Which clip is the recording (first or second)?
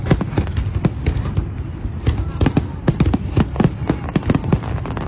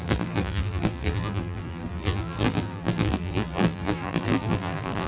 first